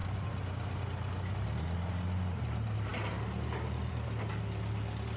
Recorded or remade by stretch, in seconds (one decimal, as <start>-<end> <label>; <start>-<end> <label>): 0.0-5.2 recorded